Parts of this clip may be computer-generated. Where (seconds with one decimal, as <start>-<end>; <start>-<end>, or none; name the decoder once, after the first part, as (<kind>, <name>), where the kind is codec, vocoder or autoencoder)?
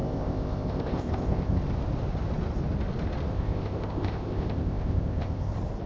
0.0-1.6 (codec, ZipCodec); 3.3-5.5